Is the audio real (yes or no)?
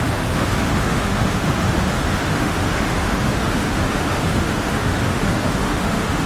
no